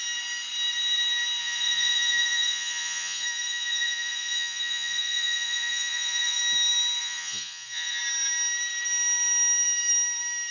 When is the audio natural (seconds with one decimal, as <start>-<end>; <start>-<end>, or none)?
0.0-1.4; 6.4-7.0; 8.0-10.5